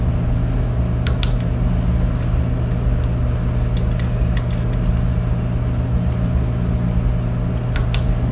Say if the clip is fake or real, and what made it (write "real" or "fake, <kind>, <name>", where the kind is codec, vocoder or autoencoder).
real